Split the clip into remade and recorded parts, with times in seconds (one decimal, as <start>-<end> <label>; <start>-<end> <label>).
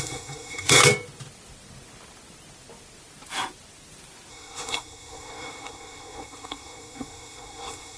0.0-0.8 remade; 0.8-4.3 recorded; 4.3-8.0 remade